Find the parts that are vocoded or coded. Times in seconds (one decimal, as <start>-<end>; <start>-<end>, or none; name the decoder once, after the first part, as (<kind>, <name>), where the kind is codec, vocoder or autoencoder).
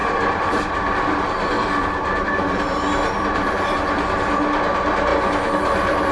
0.0-5.1 (vocoder, BigVGAN v2)